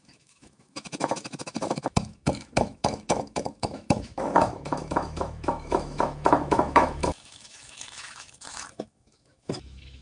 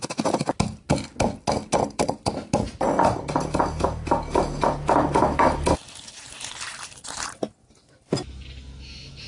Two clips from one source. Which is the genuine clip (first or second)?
second